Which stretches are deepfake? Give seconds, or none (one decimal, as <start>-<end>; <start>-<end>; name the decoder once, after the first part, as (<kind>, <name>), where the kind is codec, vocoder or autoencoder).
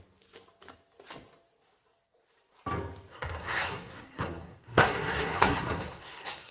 3.1-6.5 (codec, SNAC)